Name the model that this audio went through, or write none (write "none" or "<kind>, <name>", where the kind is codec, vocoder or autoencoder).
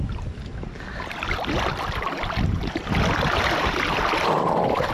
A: none